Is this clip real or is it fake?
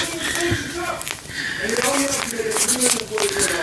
real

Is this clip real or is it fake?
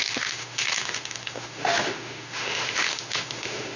fake